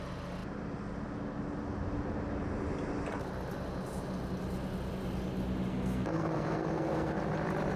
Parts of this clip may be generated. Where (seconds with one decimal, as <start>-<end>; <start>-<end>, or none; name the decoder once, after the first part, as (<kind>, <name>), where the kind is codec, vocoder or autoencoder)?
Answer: 5.7-7.2 (codec, SNAC)